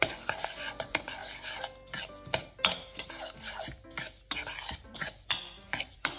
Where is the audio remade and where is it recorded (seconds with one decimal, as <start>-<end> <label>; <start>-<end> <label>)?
0.0-1.2 remade; 1.2-4.9 recorded; 4.9-6.2 remade